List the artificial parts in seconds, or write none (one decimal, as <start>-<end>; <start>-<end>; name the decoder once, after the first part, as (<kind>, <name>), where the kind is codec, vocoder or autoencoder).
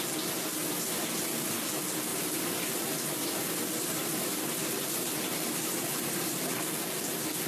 0.6-1.6 (vocoder, BigVGAN v2); 2.1-6.6